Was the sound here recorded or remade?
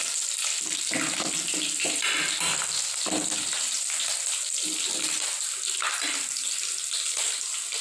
recorded